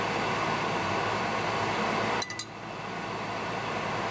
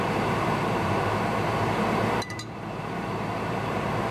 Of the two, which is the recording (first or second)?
first